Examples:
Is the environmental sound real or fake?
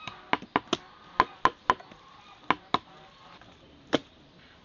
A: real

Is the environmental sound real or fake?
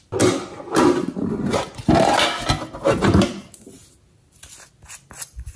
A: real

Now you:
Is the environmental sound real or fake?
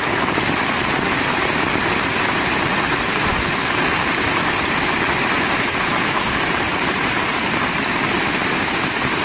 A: fake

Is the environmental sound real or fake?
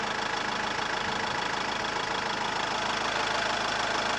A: real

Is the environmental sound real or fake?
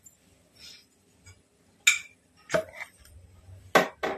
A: real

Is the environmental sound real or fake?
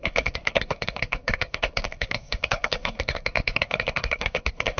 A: fake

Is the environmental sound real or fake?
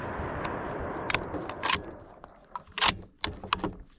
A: real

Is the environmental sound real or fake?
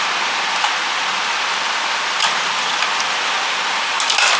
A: real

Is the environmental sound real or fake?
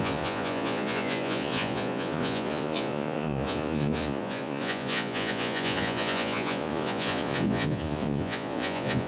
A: fake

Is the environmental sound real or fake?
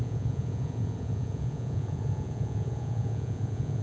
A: fake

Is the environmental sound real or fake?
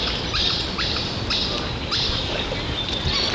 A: real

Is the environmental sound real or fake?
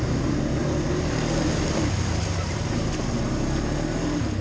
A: real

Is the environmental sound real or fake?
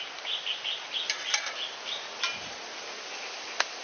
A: real